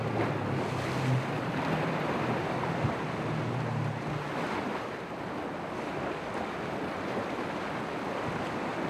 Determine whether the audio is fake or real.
real